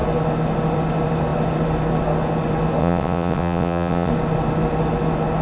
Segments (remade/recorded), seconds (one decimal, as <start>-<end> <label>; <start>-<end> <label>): 0.0-2.8 recorded; 2.8-4.1 remade; 4.1-5.4 recorded